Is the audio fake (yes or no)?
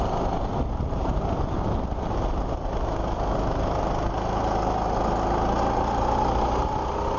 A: no